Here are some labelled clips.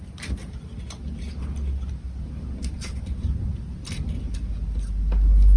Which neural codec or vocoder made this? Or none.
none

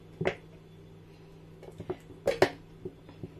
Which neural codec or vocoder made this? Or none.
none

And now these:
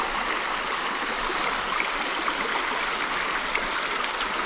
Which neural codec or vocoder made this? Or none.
none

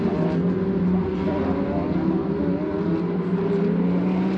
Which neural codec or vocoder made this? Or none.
none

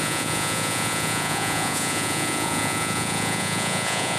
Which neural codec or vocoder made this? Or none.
vocoder, Vocos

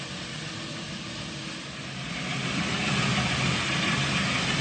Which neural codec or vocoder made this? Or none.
none